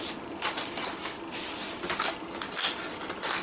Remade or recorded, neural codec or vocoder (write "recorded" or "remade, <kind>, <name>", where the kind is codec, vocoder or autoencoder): remade, vocoder, BigVGAN v2